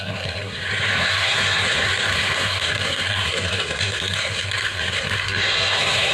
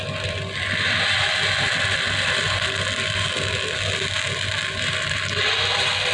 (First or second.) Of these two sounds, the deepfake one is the first